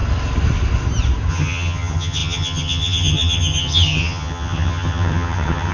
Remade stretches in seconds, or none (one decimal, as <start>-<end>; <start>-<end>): 1.3-5.7